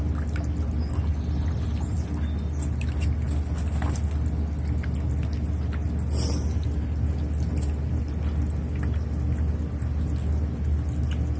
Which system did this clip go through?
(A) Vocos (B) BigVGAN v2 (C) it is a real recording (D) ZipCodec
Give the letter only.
C